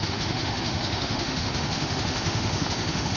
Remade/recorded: remade